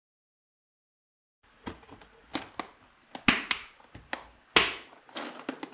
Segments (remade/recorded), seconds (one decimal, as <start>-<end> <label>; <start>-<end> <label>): 0.0-2.3 remade; 2.3-5.7 recorded